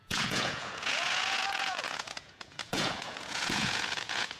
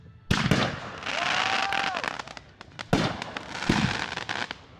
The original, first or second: second